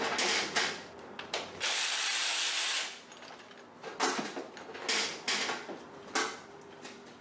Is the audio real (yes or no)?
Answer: yes